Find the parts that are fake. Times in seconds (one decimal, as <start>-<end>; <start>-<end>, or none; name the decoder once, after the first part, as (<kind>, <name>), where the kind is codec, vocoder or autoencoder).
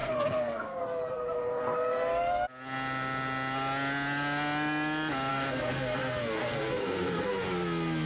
0.0-0.8 (codec, SNAC); 5.3-7.3